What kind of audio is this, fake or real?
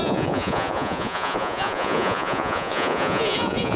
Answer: fake